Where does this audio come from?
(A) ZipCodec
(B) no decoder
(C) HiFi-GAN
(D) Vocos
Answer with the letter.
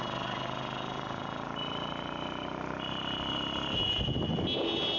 B